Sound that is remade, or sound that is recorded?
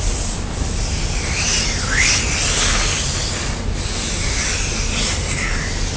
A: recorded